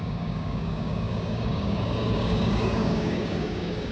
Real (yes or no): no